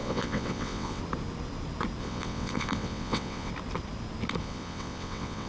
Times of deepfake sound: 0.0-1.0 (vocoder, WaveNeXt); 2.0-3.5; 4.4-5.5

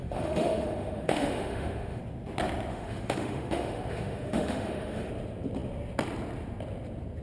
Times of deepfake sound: 0.0-2.0 (autoencoder, DAC-VAE); 2.7-5.1

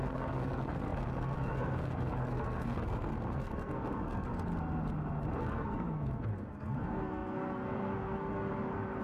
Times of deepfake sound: 0.0-4.3 (codec, SNAC); 5.4-9.0

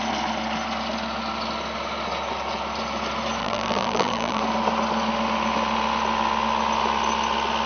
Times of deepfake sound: 3.4-4.4 (vocoder, BigVGAN v2)

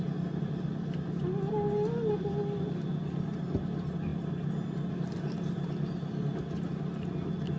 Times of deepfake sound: none

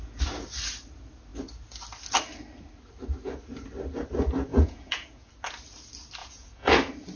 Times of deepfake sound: 4.5-5.3 (vocoder, Vocos); 6.2-6.7